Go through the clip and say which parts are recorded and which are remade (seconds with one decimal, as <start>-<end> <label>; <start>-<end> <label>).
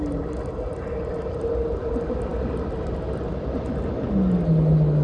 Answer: 0.0-5.0 recorded